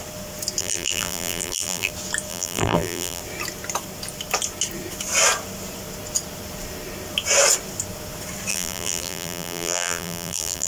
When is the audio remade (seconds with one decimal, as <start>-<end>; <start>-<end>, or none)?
0.6-1.9; 2.3-3.2; 8.5-10.7